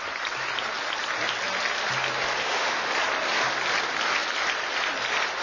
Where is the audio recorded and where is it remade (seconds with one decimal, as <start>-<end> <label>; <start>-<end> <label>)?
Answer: 0.0-2.4 recorded; 2.4-2.9 remade; 2.9-5.4 recorded